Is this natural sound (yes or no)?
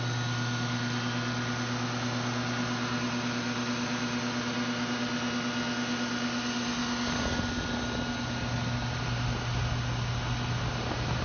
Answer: yes